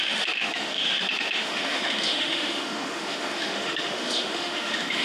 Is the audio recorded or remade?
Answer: remade